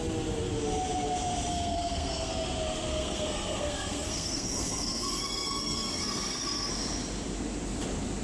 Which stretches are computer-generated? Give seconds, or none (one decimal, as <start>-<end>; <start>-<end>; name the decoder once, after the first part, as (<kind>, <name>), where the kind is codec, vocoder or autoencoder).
1.5-2.3 (codec, SNAC); 2.9-6.7